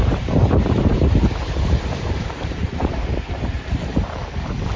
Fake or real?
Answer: fake